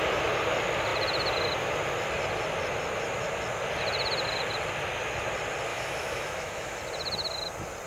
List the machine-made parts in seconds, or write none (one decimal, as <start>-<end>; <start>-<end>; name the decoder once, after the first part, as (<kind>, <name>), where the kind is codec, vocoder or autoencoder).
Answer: 5.7-6.8 (autoencoder, DAC-VAE)